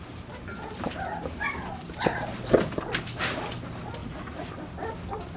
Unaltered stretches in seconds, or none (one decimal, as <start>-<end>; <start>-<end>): 0.0-4.0; 4.5-5.4